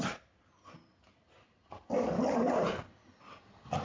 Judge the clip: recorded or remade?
recorded